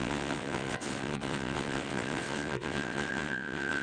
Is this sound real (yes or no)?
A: no